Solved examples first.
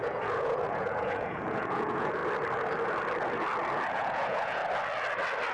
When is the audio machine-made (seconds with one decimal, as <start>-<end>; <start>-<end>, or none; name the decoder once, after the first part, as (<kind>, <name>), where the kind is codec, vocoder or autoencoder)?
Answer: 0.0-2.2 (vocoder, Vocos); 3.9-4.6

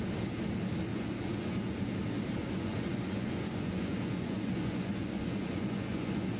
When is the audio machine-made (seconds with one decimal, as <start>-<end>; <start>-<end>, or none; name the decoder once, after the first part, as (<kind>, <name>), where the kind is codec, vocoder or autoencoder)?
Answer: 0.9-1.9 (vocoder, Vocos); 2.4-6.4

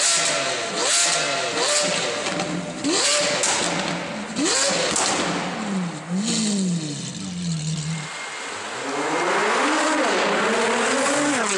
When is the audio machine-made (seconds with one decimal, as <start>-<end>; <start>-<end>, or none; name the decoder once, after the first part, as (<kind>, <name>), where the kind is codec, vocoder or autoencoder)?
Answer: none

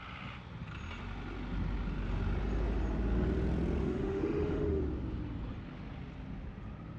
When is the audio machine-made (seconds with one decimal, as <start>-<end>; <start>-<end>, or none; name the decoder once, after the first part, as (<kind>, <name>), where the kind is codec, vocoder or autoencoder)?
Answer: 3.8-4.8 (autoencoder, DAC-VAE)